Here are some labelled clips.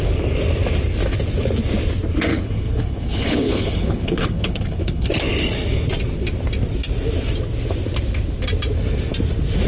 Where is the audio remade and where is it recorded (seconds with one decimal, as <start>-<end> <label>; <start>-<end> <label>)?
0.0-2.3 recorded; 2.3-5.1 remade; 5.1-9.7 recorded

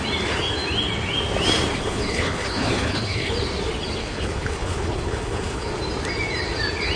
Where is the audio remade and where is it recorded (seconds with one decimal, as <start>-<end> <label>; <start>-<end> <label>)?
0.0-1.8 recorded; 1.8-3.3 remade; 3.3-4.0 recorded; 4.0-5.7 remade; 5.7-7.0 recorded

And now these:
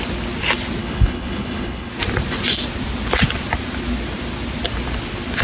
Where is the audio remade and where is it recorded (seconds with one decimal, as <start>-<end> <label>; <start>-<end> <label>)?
0.0-0.8 recorded; 0.8-1.9 remade; 1.9-5.4 recorded

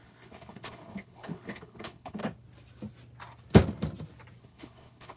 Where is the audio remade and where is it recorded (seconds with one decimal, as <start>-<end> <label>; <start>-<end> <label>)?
0.0-2.2 remade; 2.2-4.4 recorded; 4.4-5.2 remade